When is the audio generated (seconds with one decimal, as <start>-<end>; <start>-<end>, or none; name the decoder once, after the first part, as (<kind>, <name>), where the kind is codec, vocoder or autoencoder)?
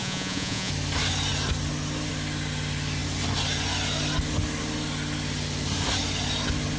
0.0-0.7 (vocoder, Vocos)